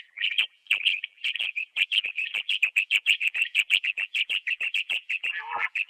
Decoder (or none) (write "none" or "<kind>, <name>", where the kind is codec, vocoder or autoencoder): vocoder, BigVGAN v2